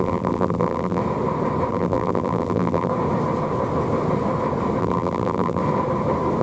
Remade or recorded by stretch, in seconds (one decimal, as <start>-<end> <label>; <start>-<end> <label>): 0.0-1.0 remade; 1.0-1.7 recorded; 1.7-2.9 remade; 2.9-4.8 recorded; 4.8-5.6 remade; 5.6-6.4 recorded